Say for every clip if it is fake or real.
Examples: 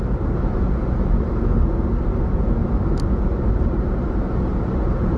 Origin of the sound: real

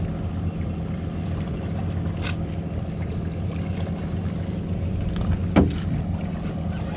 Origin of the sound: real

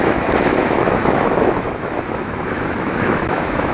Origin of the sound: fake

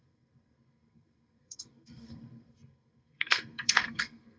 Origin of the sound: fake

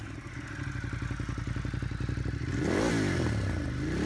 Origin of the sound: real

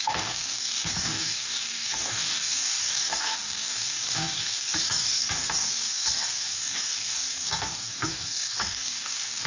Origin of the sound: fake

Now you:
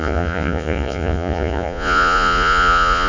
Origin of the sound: fake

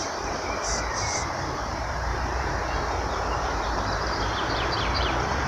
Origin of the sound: fake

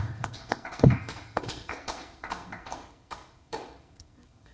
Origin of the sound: fake